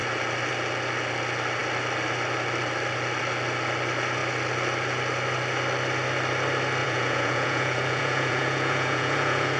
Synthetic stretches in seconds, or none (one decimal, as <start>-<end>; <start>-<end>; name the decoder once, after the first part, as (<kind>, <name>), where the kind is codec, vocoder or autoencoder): 6.8-9.6 (vocoder, Vocos)